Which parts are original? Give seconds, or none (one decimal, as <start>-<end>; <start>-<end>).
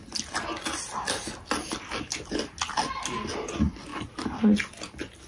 0.0-5.3